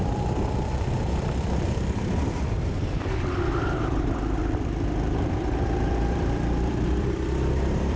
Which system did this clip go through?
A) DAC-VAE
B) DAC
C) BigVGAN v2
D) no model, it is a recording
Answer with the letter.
C